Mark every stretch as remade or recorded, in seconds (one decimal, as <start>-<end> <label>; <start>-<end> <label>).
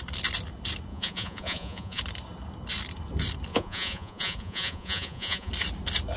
0.0-0.9 recorded; 0.9-2.0 remade; 2.0-3.5 recorded; 3.5-5.5 remade; 5.5-6.2 recorded